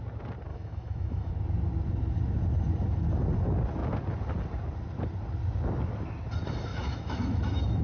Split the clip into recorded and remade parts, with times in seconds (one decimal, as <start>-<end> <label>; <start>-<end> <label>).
0.0-0.5 recorded; 0.5-1.3 remade; 1.3-6.7 recorded; 6.7-7.8 remade